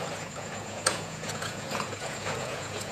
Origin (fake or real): fake